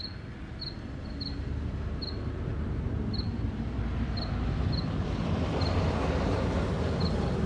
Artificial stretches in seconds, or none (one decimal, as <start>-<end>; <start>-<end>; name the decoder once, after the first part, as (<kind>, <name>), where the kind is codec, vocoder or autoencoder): 1.0-7.5 (vocoder, BigVGAN v2)